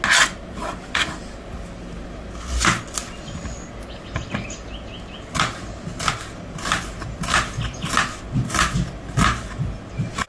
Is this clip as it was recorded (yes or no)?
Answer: yes